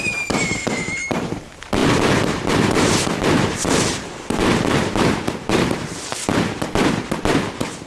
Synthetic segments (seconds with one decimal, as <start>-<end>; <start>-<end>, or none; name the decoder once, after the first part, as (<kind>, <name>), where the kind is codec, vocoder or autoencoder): 0.0-6.1 (vocoder, BigVGAN v2)